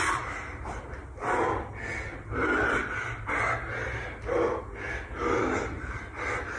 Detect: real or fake real